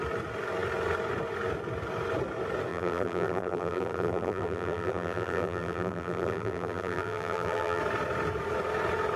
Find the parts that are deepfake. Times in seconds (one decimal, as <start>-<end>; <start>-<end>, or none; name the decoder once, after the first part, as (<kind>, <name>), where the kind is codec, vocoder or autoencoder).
2.7-7.8 (vocoder, BigVGAN v2)